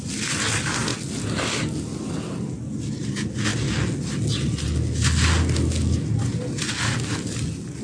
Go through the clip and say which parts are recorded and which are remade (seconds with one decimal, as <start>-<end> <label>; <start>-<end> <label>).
0.0-7.8 recorded

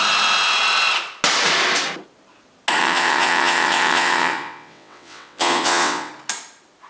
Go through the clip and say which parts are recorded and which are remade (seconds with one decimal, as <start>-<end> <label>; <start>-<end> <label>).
0.0-2.8 recorded; 2.8-6.1 remade; 6.1-6.9 recorded

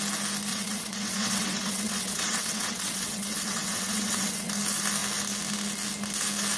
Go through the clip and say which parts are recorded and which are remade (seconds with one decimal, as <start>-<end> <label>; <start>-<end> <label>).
0.0-0.5 recorded; 0.5-4.5 remade; 4.5-6.6 recorded

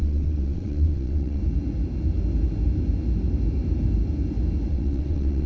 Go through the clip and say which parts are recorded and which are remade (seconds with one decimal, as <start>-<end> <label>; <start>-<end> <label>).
0.0-1.4 remade; 1.4-4.7 recorded; 4.7-5.5 remade